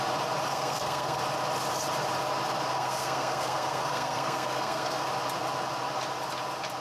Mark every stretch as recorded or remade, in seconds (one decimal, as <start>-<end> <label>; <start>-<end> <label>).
0.0-0.5 recorded; 0.5-1.2 remade; 1.2-2.7 recorded; 2.7-5.1 remade; 5.1-6.8 recorded